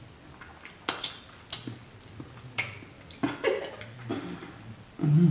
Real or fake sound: real